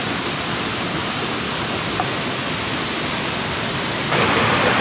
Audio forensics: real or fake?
real